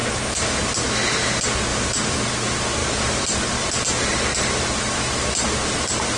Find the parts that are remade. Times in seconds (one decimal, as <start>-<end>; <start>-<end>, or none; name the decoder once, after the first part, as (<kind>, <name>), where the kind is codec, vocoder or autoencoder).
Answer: 0.0-0.6 (vocoder, BigVGAN v2); 1.7-2.2; 2.8-6.2

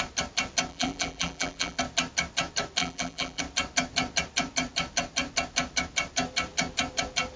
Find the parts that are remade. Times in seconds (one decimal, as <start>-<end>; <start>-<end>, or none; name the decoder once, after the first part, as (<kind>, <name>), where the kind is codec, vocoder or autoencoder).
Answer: 0.7-1.8 (vocoder, BigVGAN v2); 2.8-3.4

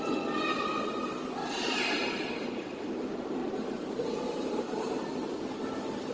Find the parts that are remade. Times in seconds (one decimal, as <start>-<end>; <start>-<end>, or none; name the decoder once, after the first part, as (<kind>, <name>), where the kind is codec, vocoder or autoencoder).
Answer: 3.4-4.9 (vocoder, BigVGAN v2)

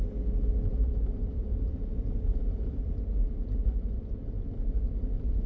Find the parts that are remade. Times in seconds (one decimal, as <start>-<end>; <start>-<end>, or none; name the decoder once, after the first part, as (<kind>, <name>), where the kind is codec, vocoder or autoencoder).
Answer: 0.7-4.0 (vocoder, BigVGAN v2)

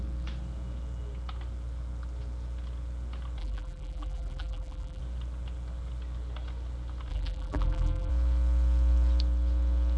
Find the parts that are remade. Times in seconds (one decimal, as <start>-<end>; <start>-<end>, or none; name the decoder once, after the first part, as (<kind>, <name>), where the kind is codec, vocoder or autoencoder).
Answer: 3.4-5.0 (vocoder, BigVGAN v2); 7.1-8.1

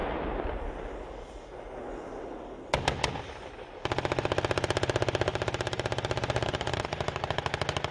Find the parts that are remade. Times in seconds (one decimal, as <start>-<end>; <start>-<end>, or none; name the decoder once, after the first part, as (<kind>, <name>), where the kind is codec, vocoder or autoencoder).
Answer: 5.3-7.3 (vocoder, BigVGAN v2)

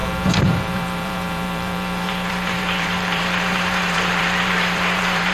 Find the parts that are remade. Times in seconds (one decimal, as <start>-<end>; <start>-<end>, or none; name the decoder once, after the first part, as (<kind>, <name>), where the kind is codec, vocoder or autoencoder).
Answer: 0.0-5.3 (vocoder, BigVGAN v2)

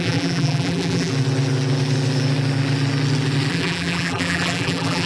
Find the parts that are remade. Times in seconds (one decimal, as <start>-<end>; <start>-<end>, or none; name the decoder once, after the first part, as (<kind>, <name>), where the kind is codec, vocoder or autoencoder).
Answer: 0.0-1.1 (vocoder, BigVGAN v2); 3.5-5.1